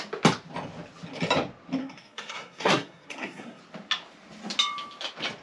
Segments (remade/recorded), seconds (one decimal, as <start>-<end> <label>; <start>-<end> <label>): 0.0-1.8 recorded; 1.8-3.6 remade; 3.6-5.4 recorded